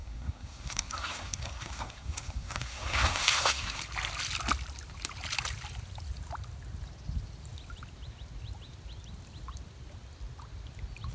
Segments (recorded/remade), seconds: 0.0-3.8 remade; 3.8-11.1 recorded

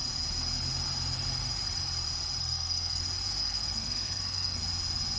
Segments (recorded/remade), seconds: 0.0-2.4 recorded; 2.4-3.0 remade; 3.0-3.4 recorded; 3.4-4.6 remade; 4.6-5.2 recorded

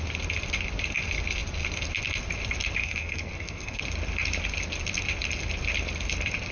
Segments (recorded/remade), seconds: 0.0-2.8 recorded; 2.8-3.8 remade; 3.8-6.5 recorded

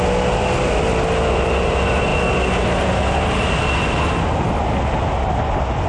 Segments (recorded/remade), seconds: 0.0-5.9 recorded

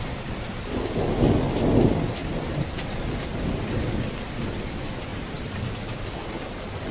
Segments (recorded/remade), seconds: 0.0-6.9 recorded

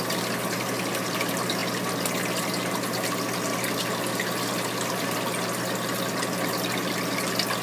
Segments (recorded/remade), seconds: 0.0-7.6 recorded

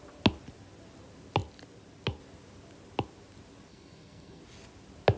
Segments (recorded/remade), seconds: 0.0-3.7 recorded; 3.7-4.4 remade; 4.4-5.2 recorded